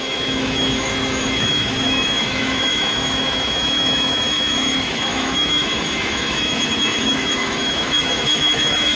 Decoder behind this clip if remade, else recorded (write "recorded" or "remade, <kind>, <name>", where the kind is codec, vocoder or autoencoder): remade, autoencoder, DAC-VAE